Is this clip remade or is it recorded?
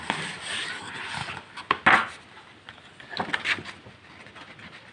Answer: recorded